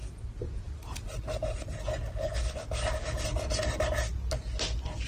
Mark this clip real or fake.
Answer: real